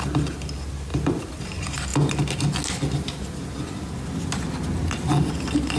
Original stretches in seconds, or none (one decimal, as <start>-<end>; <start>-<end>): 0.0-5.8